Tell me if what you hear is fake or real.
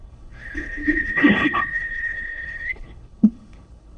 fake